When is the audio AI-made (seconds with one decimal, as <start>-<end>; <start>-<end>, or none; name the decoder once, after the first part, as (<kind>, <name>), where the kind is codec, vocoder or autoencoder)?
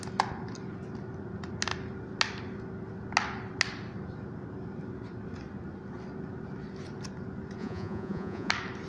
7.6-8.5 (vocoder, Vocos)